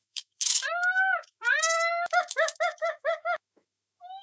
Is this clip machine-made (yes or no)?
yes